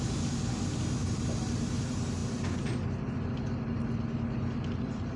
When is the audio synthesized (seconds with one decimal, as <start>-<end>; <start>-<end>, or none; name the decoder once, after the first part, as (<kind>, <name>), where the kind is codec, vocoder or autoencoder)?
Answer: none